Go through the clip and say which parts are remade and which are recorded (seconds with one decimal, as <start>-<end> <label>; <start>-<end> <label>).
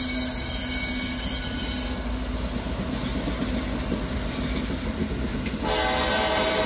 0.0-6.7 recorded